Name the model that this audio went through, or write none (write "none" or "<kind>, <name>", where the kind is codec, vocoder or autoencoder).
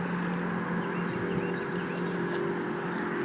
none